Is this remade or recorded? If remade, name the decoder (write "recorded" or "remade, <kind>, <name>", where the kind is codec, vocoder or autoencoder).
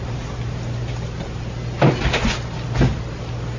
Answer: recorded